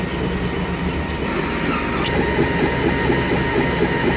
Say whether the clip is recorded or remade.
recorded